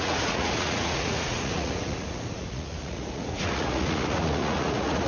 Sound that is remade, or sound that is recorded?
remade